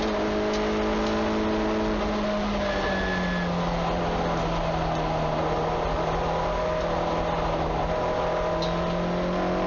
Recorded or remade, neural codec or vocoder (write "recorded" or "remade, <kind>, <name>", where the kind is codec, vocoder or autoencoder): recorded